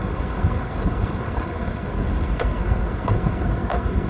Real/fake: fake